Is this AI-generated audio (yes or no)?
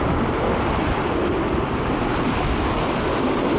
no